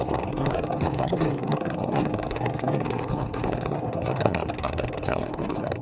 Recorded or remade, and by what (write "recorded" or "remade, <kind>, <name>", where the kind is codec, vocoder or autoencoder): remade, codec, SNAC